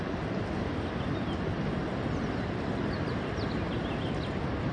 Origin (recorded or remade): recorded